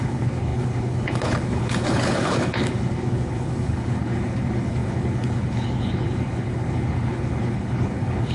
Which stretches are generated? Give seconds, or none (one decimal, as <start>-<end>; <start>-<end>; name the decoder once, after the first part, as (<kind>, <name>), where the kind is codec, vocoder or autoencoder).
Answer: 0.0-8.3 (codec, HILCodec)